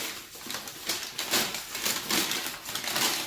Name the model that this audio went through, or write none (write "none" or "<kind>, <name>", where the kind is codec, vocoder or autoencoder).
none